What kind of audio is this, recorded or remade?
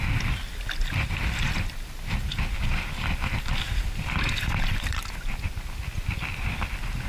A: recorded